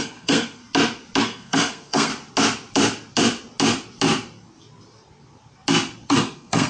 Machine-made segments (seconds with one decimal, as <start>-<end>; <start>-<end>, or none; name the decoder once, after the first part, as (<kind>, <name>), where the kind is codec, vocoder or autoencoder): 0.0-0.6 (codec, SNAC); 1.2-2.1; 6.1-6.7